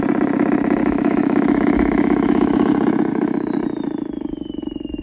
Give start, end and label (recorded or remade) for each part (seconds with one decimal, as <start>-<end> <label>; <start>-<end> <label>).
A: 0.0-0.8 recorded; 0.8-2.7 remade; 2.7-3.1 recorded; 3.1-3.6 remade; 3.6-5.0 recorded